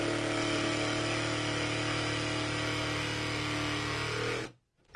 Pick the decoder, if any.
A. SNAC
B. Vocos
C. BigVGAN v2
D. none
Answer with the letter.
D